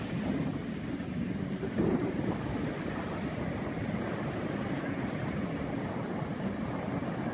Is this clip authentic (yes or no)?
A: yes